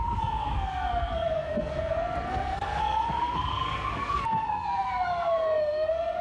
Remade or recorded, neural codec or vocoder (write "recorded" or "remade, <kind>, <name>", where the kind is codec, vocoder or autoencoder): remade, codec, SNAC